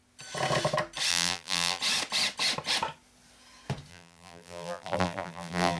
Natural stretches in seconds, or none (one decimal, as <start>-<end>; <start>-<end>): 0.0-1.1; 1.8-3.9